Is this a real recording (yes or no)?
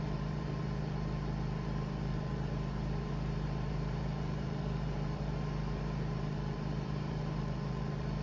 no